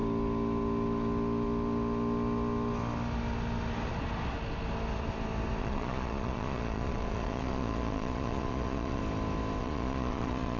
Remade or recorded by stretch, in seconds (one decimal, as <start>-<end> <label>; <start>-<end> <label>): 0.0-5.6 recorded; 5.6-9.0 remade; 9.0-9.6 recorded; 9.6-10.6 remade